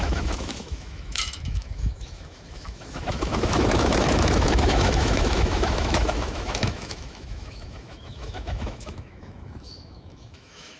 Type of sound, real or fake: fake